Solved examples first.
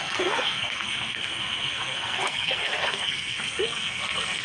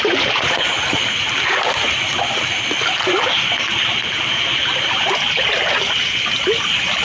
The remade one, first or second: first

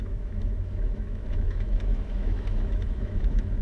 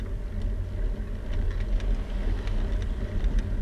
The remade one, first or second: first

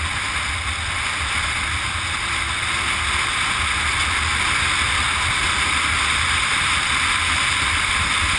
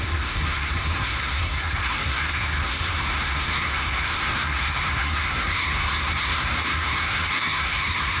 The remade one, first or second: second